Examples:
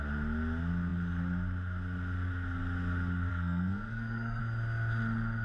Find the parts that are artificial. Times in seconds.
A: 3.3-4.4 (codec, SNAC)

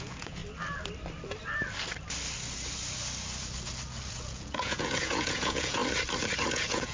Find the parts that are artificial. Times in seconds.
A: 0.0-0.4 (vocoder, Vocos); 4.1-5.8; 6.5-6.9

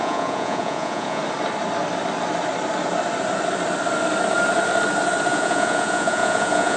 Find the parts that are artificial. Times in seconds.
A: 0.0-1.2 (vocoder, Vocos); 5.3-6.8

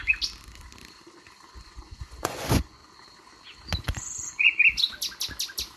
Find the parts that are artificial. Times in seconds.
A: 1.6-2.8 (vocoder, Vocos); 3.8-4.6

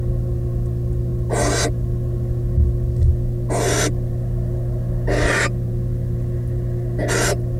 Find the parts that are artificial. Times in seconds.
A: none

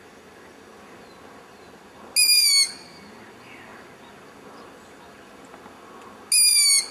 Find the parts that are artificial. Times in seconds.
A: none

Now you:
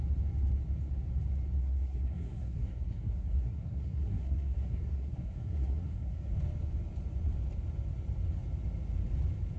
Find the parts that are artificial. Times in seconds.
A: 1.6-6.3 (codec, SNAC)

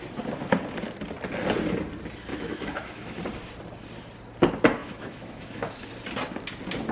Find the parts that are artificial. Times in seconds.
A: 2.3-3.2 (autoencoder, DAC-VAE); 4.8-5.9